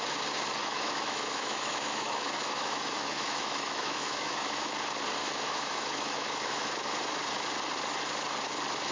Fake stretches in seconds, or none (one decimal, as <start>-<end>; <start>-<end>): 0.6-4.7; 5.2-6.7